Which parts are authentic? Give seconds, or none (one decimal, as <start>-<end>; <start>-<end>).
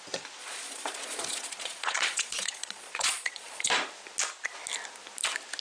0.0-0.4; 3.7-5.6